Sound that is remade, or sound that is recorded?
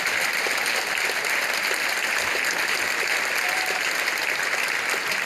recorded